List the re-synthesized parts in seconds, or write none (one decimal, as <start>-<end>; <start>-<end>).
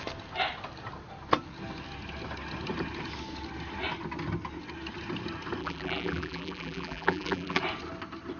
5.6-7.6